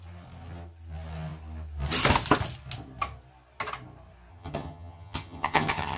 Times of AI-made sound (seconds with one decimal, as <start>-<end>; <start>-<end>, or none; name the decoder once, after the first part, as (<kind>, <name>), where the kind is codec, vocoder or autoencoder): 4.3-6.0 (vocoder, HiFi-GAN)